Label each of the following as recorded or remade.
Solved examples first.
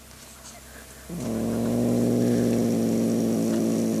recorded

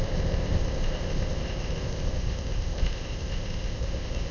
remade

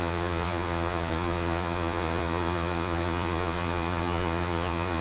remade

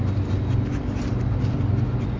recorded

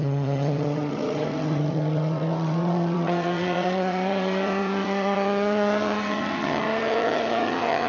remade